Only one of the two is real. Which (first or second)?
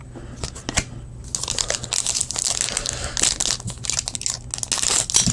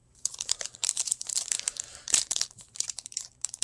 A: first